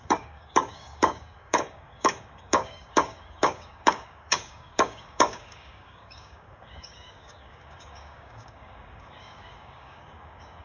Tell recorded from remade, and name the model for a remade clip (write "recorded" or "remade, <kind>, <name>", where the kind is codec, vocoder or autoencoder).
remade, codec, DAC